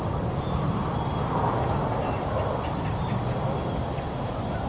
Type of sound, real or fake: real